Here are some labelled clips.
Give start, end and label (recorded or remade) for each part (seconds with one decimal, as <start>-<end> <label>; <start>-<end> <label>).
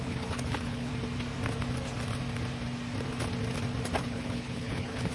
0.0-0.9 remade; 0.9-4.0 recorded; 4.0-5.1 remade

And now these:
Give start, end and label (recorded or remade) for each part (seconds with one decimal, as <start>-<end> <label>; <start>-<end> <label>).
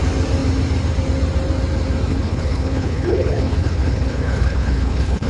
0.0-2.1 recorded; 2.1-5.3 remade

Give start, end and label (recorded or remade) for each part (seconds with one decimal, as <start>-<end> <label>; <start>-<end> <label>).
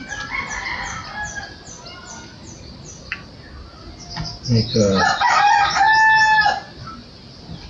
0.0-7.7 recorded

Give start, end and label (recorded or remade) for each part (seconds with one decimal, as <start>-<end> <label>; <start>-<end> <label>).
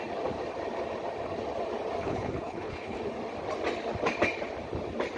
0.0-2.0 recorded; 2.0-3.0 remade; 3.0-5.2 recorded